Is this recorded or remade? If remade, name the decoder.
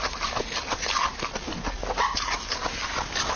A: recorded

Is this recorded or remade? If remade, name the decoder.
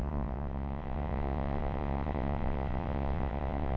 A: remade, vocoder, WaveNeXt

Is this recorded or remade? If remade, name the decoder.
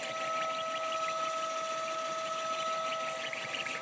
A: recorded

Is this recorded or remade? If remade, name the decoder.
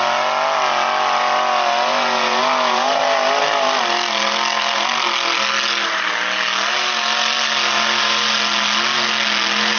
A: recorded